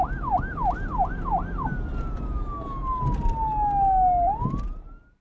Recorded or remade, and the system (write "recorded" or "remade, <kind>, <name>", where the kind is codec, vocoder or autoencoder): recorded